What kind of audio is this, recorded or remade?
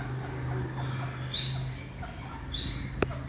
recorded